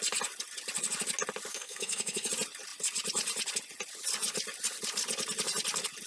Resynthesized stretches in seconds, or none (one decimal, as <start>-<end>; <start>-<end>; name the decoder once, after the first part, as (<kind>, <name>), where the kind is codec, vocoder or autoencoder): 1.5-2.3 (codec, SNAC)